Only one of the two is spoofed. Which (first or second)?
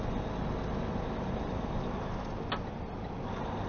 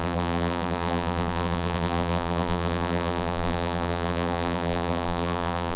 second